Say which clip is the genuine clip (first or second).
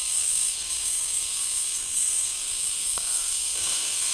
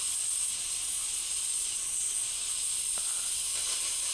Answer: second